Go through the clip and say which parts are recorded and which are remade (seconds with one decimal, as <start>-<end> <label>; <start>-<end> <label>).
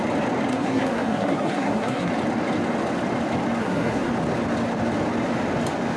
0.0-0.5 recorded; 0.5-2.1 remade; 2.1-3.6 recorded; 3.6-4.1 remade; 4.1-6.0 recorded